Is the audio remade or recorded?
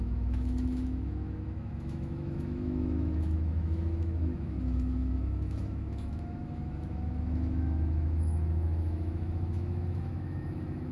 remade